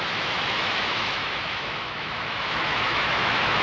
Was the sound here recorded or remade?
remade